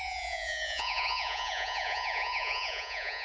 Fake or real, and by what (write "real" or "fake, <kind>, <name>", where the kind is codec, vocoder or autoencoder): fake, vocoder, Vocos